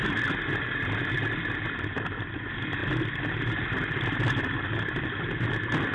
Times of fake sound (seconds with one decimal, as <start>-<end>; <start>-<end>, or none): none